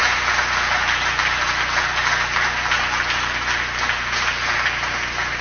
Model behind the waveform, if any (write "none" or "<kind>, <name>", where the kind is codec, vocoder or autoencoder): none